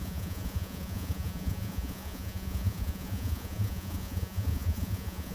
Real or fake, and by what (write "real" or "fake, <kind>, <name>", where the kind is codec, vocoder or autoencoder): fake, vocoder, Vocos